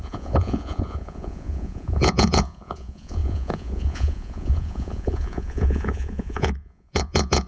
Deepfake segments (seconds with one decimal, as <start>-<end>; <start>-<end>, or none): 0.0-7.5